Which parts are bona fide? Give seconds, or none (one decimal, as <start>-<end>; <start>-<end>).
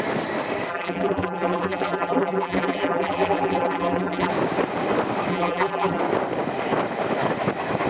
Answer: 0.0-0.7; 4.3-5.3; 6.0-7.9